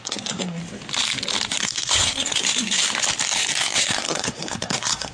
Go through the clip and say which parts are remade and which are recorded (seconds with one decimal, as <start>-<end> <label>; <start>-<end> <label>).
0.0-0.6 remade; 0.6-1.6 recorded; 1.6-2.8 remade; 2.8-3.6 recorded; 3.6-5.1 remade